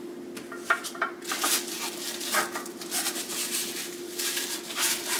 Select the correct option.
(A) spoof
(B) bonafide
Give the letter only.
B